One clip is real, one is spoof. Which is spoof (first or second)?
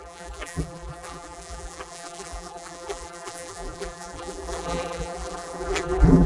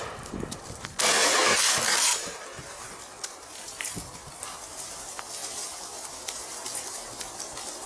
first